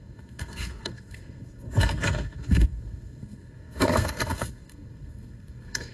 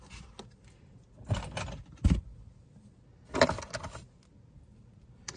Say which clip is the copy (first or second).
first